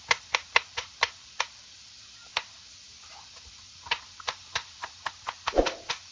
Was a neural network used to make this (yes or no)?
yes